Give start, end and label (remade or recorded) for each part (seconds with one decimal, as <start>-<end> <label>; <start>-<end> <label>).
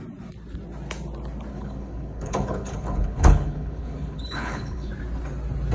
0.0-1.5 recorded; 1.5-4.9 remade; 4.9-5.7 recorded